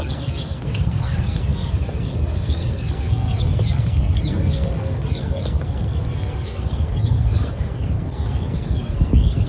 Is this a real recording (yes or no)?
no